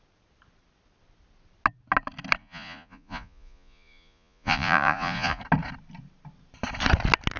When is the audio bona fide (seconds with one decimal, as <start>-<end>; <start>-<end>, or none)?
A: 0.0-2.4; 5.4-7.4